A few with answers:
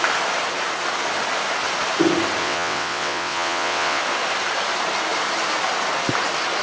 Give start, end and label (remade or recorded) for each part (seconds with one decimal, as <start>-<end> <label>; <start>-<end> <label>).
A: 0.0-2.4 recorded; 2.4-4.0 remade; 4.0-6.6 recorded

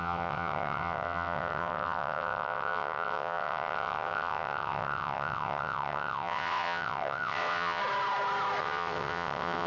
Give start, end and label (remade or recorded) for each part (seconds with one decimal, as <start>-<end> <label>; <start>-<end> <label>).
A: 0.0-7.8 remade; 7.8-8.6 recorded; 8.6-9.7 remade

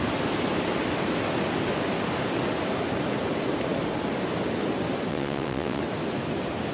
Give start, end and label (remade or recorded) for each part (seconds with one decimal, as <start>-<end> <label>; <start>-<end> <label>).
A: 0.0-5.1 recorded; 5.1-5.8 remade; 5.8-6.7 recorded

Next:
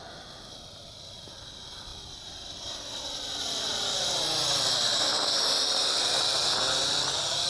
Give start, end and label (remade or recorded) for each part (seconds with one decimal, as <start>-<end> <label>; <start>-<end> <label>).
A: 0.0-7.5 recorded